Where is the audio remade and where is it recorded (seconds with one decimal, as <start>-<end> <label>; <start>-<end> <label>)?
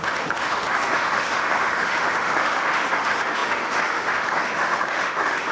0.0-5.5 remade